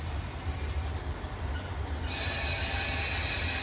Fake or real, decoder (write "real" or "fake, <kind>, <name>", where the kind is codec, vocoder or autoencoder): real